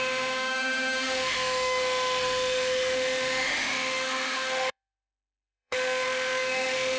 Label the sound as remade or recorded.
remade